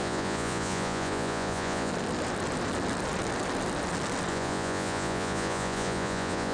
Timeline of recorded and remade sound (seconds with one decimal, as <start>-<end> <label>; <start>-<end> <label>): 0.0-1.9 remade; 1.9-4.3 recorded; 4.3-6.5 remade